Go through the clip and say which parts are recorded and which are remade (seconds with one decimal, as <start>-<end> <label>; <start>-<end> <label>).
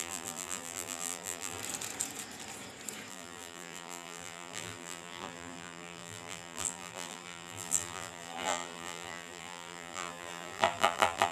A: 0.0-1.6 remade; 1.6-3.1 recorded; 3.1-11.3 remade